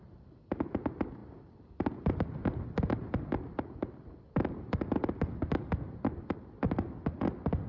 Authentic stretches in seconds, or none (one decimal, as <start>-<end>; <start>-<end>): 0.0-7.7